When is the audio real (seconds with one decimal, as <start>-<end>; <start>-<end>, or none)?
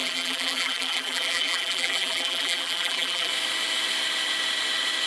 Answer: 3.3-5.1